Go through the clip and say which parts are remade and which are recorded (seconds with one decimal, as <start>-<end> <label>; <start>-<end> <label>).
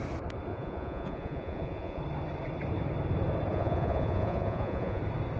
0.0-0.5 recorded; 0.5-2.0 remade; 2.0-3.5 recorded; 3.5-5.0 remade; 5.0-5.4 recorded